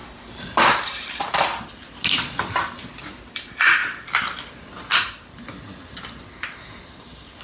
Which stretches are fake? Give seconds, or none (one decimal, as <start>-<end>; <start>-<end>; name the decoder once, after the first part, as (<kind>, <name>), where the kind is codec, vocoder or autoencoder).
0.0-1.5 (vocoder, BigVGAN v2); 3.3-3.8; 7.0-7.4